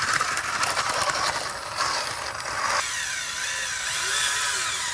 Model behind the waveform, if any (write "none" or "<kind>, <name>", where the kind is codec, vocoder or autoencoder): vocoder, BigVGAN v2